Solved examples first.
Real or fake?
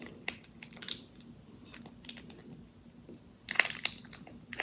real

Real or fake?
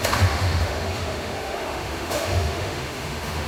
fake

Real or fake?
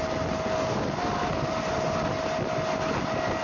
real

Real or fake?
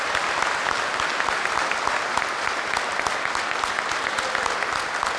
real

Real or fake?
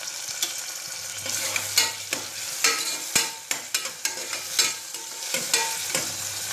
real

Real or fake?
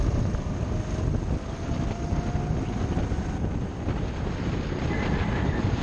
real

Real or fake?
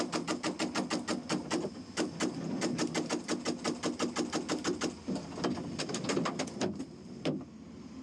real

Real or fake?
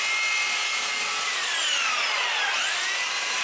real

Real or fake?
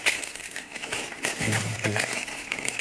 fake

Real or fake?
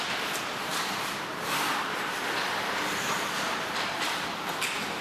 real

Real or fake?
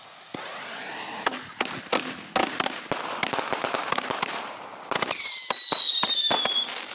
real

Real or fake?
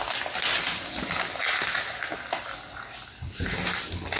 real